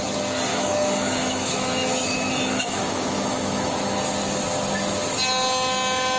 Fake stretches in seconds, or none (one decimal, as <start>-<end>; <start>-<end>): 0.5-4.0